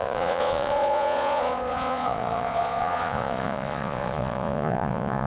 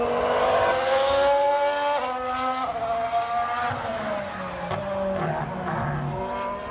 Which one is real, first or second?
second